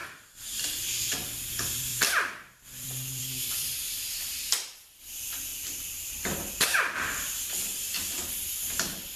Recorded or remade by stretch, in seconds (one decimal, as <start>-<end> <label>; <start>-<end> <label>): 0.0-0.7 recorded; 0.7-1.9 remade; 1.9-2.6 recorded; 2.6-9.2 remade